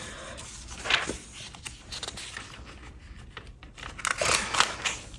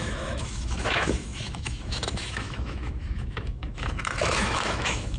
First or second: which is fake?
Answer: second